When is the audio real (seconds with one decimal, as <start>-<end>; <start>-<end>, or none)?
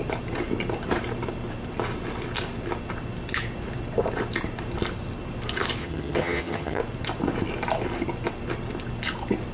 0.0-5.8; 6.8-9.5